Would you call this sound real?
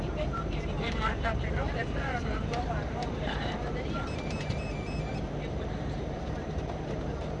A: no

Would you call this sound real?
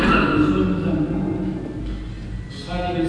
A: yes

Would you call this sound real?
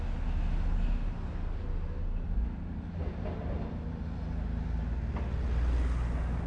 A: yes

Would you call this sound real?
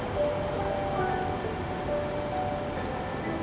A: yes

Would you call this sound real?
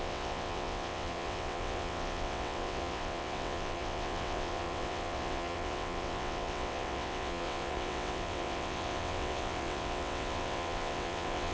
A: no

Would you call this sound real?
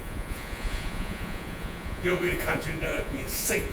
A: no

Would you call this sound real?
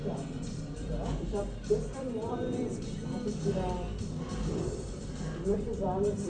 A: no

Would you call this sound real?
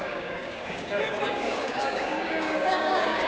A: no